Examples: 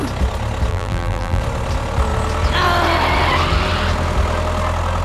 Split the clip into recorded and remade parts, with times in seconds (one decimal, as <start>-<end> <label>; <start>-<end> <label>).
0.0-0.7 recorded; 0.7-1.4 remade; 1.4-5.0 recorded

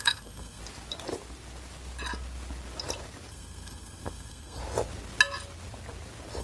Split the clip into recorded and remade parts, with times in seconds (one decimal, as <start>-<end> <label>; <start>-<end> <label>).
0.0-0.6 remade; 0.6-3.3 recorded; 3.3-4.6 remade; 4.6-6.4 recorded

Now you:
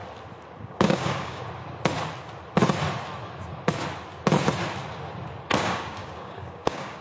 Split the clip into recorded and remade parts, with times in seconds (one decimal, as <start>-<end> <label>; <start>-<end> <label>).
0.0-0.6 recorded; 0.6-1.4 remade; 1.4-5.6 recorded; 5.6-7.0 remade

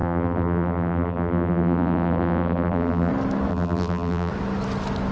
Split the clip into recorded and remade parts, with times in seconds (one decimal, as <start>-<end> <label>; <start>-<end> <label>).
0.0-3.1 remade; 3.1-3.5 recorded; 3.5-4.3 remade; 4.3-5.1 recorded

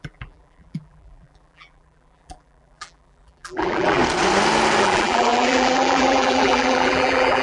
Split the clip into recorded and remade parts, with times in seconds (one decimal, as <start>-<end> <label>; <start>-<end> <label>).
0.0-4.0 remade; 4.0-4.8 recorded; 4.8-7.4 remade

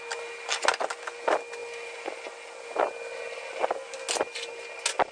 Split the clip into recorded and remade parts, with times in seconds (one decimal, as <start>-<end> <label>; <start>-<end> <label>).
0.0-5.1 recorded

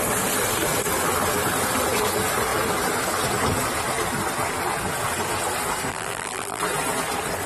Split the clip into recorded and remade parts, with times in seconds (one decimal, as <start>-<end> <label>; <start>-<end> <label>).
0.0-5.9 recorded; 5.9-6.6 remade; 6.6-7.5 recorded

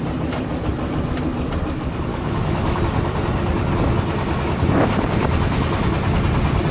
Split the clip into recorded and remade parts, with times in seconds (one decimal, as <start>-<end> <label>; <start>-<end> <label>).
0.0-2.1 recorded; 2.1-2.8 remade; 2.8-6.7 recorded